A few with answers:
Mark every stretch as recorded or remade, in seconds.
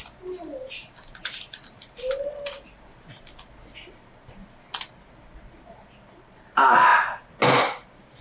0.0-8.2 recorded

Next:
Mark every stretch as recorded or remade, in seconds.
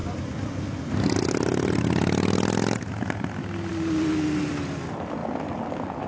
0.0-6.1 recorded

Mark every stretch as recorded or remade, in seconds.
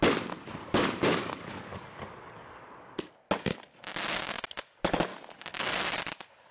0.0-0.6 recorded; 0.6-2.6 remade; 2.6-5.1 recorded; 5.1-5.7 remade; 5.7-6.5 recorded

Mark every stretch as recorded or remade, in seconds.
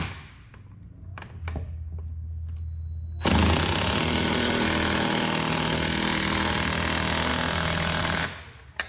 0.0-8.9 recorded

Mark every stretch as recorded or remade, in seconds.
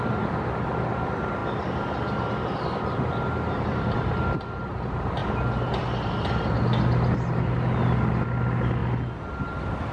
0.0-9.9 recorded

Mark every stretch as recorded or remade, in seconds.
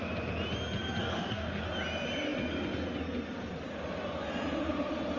0.0-1.0 recorded; 1.0-1.6 remade; 1.6-5.2 recorded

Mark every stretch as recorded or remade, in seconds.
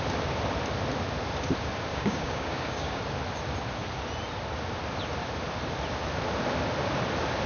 0.0-1.9 recorded; 1.9-3.0 remade; 3.0-7.5 recorded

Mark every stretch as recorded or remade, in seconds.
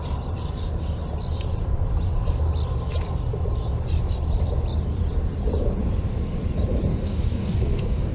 0.0-6.9 recorded; 6.9-8.1 remade